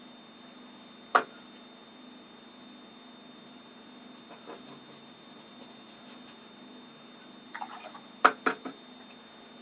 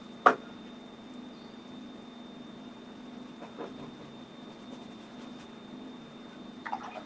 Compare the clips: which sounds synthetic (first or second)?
second